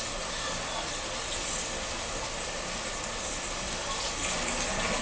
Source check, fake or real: real